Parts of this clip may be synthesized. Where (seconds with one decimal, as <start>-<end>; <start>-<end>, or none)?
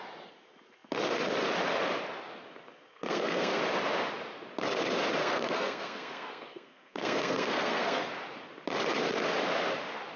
2.9-3.6; 5.2-8.1